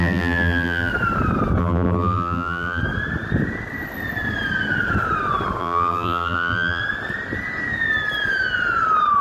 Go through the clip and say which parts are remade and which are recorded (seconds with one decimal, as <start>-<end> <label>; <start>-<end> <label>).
0.0-0.9 remade; 0.9-1.6 recorded; 1.6-2.8 remade; 2.8-5.6 recorded; 5.6-6.8 remade; 6.8-9.2 recorded